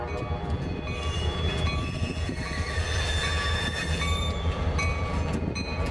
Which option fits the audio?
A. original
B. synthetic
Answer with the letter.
B